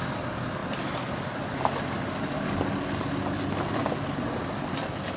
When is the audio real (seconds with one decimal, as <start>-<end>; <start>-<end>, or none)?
0.0-5.2